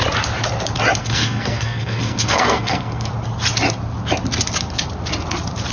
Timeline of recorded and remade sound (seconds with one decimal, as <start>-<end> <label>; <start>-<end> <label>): 0.0-1.0 recorded; 1.0-3.1 remade; 3.1-5.7 recorded